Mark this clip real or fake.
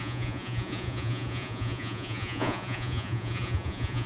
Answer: fake